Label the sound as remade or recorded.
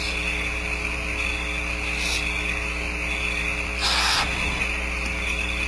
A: recorded